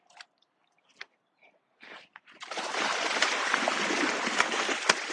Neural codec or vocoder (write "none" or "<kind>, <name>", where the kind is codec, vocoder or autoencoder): none